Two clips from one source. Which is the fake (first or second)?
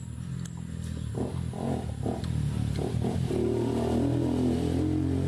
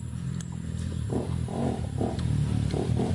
second